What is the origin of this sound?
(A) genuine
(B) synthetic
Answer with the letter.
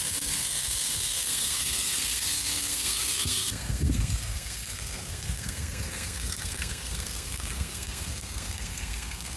B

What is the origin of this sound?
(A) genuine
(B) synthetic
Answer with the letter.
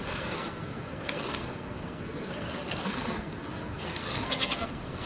B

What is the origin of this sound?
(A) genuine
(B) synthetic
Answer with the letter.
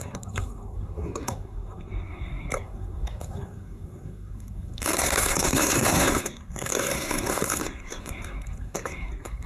B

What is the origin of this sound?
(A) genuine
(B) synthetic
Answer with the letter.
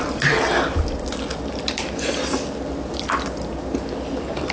A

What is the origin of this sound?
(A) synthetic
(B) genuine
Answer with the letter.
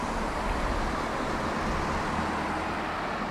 B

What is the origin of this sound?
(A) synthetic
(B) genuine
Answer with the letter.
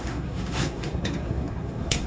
A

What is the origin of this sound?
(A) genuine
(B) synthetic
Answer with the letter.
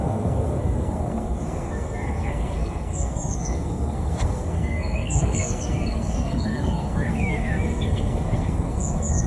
B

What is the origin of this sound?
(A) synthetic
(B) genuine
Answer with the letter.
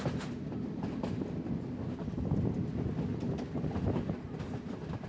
B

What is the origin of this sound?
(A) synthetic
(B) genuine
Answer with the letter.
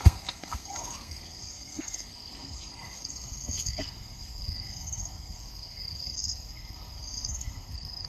A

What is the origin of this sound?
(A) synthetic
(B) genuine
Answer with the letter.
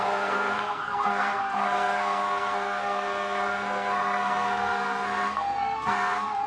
A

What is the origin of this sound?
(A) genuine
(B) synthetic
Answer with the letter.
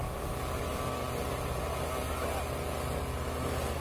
A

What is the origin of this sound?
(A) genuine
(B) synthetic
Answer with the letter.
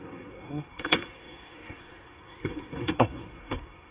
B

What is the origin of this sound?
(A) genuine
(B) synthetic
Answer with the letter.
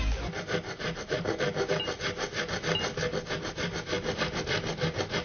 A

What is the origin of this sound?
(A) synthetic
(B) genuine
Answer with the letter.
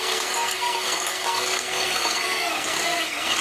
A